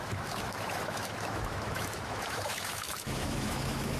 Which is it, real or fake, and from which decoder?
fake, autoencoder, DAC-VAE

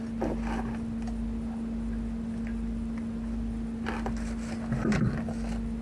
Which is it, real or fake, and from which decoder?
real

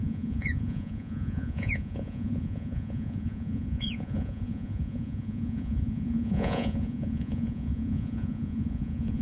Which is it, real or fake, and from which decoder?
fake, vocoder, Vocos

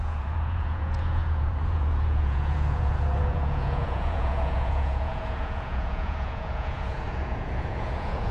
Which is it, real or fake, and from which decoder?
fake, vocoder, Vocos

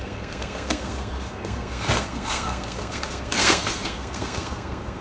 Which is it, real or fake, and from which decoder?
fake, codec, SNAC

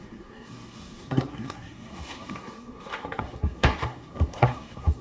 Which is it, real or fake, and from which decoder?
fake, codec, SNAC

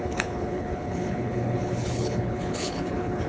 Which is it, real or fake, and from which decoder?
fake, codec, HILCodec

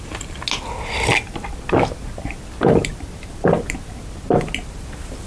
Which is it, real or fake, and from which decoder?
real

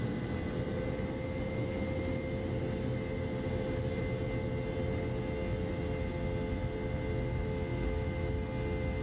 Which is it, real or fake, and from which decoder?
real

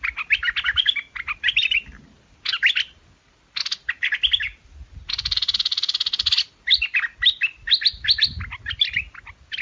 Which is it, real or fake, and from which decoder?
real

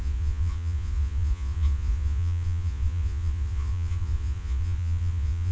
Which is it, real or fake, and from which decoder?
fake, vocoder, Vocos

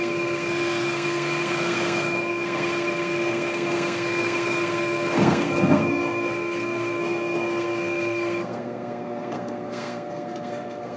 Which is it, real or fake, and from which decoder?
fake, codec, SNAC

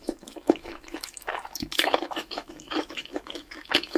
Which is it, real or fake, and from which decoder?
fake, autoencoder, DAC-VAE